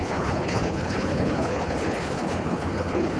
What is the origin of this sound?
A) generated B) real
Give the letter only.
A